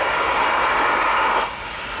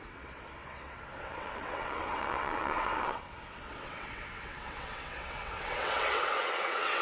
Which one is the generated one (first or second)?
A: second